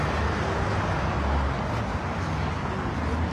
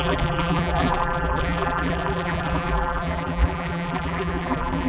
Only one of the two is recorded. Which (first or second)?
first